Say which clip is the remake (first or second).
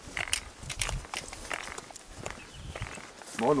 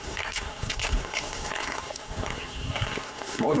second